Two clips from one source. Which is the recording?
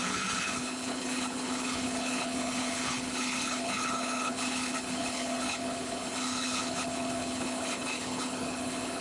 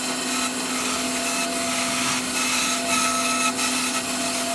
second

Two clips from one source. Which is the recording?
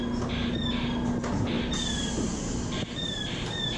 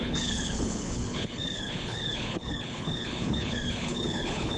first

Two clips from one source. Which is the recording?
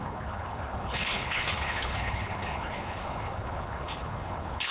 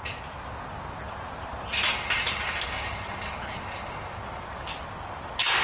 second